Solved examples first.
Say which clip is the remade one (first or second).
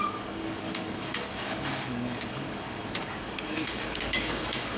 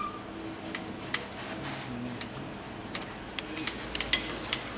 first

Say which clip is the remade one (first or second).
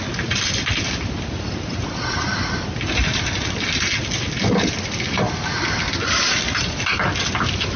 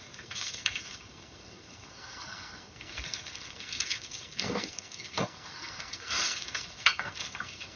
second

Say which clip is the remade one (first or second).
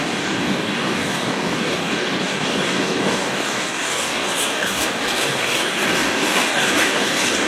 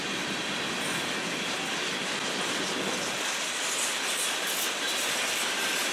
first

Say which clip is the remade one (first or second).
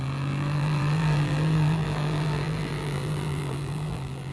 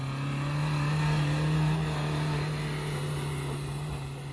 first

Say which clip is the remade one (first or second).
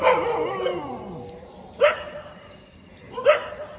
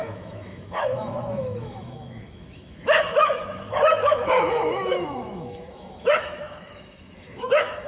second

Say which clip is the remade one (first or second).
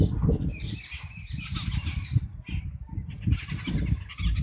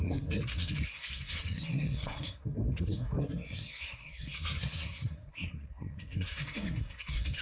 second